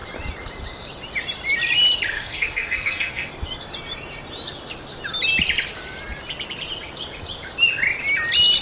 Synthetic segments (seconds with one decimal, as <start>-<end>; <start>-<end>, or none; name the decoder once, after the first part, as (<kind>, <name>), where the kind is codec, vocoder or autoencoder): 2.1-3.3 (codec, SNAC)